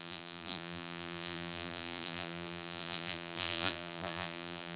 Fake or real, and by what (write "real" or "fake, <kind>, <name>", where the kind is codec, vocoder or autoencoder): fake, vocoder, BigVGAN v2